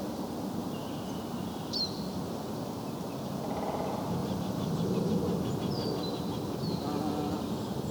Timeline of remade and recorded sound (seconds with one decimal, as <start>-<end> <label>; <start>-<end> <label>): 0.0-4.2 recorded; 4.2-5.0 remade; 5.0-7.9 recorded